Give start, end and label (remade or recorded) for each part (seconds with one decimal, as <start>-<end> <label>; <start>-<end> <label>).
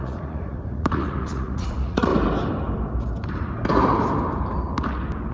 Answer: 0.0-2.1 remade; 2.1-5.3 recorded